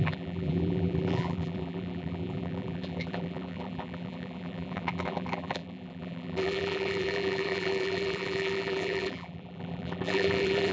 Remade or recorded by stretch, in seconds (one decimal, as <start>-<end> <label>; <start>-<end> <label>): 0.0-10.7 remade